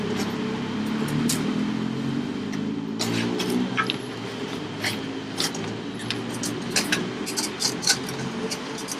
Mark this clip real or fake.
real